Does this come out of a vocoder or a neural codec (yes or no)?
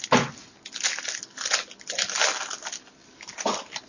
no